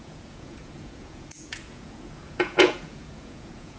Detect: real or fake fake